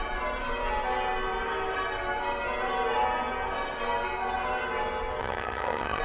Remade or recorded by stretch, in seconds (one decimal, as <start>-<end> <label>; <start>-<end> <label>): 0.0-5.2 recorded; 5.2-6.0 remade